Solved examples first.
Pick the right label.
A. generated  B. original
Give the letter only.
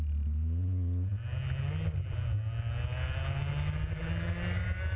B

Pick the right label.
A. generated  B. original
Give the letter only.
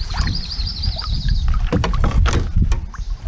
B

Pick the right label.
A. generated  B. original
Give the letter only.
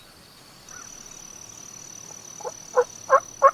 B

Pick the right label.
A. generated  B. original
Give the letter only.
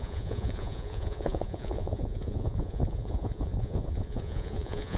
A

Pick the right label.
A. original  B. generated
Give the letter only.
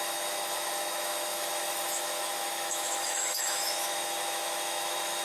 B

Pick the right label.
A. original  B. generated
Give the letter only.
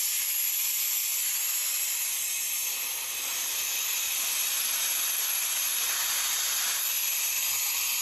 A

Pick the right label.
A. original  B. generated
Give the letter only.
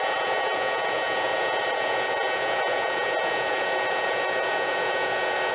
B